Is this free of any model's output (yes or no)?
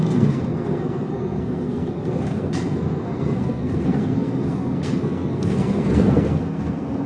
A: no